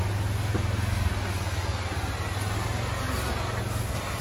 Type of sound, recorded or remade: recorded